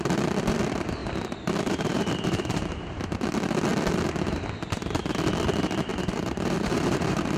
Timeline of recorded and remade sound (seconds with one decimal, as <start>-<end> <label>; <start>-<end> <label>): 0.0-1.0 recorded; 1.0-3.0 remade; 3.0-5.9 recorded; 5.9-7.4 remade